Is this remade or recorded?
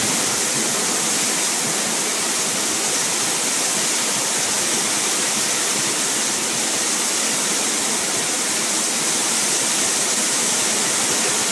recorded